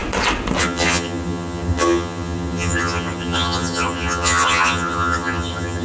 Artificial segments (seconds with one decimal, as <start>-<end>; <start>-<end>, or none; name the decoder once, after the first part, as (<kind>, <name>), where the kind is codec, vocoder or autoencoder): 0.6-5.8 (vocoder, HiFi-GAN)

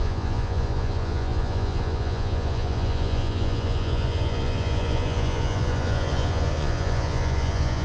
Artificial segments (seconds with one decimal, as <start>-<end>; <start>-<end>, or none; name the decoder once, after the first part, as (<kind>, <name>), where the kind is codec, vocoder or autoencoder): 0.0-7.8 (vocoder, Vocos)

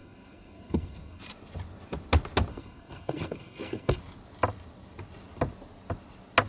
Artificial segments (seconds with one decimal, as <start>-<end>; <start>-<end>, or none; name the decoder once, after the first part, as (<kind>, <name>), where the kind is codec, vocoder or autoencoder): 0.0-1.2 (codec, SNAC); 2.5-4.0

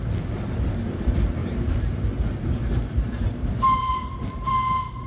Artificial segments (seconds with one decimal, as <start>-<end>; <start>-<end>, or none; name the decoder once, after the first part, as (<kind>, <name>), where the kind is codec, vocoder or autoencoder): 1.4-4.5 (vocoder, BigVGAN v2)

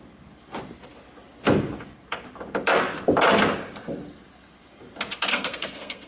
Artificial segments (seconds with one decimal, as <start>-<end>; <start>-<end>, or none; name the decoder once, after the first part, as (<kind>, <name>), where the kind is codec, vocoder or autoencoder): 5.3-6.1 (codec, SNAC)

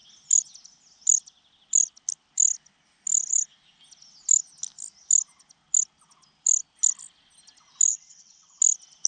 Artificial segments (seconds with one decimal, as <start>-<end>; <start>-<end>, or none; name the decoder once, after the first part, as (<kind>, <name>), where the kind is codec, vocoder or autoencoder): 7.9-8.6 (vocoder, WaveNeXt)